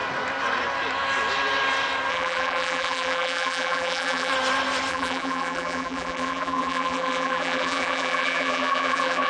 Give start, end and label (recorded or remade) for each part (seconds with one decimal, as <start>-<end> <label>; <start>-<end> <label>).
0.0-2.1 recorded; 2.1-4.3 remade; 4.3-4.9 recorded; 4.9-9.3 remade